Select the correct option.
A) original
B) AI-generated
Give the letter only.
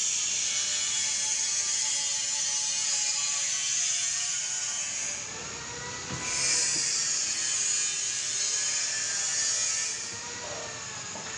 A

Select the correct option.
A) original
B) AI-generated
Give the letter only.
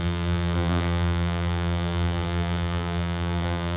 B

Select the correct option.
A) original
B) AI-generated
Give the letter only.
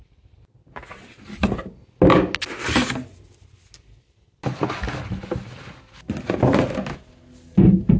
A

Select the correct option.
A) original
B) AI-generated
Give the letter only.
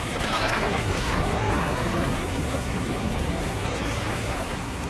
B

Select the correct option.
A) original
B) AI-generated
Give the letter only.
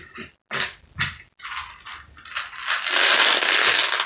A